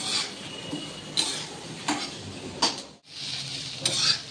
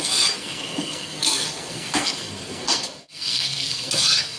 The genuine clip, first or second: first